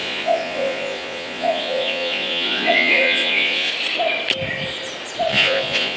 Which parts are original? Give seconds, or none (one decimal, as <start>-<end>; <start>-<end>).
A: 3.7-5.3